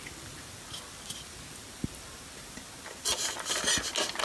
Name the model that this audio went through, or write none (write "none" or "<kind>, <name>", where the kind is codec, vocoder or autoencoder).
none